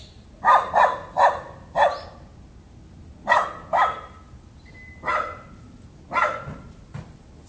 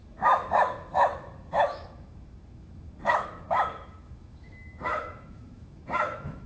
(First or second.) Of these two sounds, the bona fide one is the first